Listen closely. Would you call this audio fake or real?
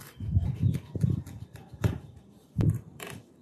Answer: fake